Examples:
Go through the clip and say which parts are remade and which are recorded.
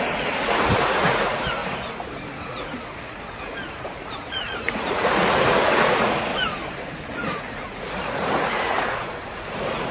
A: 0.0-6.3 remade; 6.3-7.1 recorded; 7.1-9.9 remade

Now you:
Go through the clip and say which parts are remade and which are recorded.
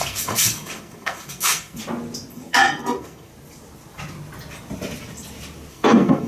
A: 0.0-1.8 remade; 1.8-2.3 recorded; 2.3-3.3 remade; 3.3-5.7 recorded; 5.7-6.3 remade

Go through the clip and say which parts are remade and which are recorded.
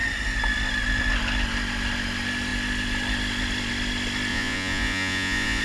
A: 0.0-4.3 recorded; 4.3-5.6 remade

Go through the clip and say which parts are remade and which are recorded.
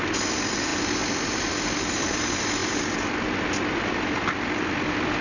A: 0.0-5.2 recorded